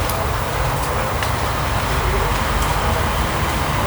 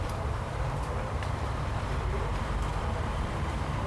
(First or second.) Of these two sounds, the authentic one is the first